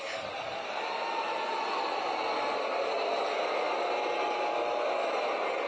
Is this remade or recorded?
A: recorded